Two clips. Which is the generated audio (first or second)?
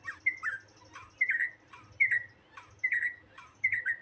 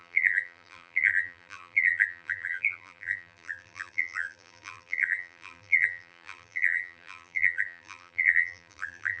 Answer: second